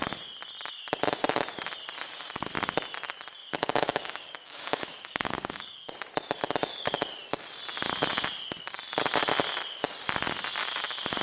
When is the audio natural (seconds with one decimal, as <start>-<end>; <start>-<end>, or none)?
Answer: 0.0-3.4; 5.9-11.2